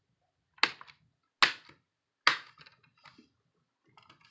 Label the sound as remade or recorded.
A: recorded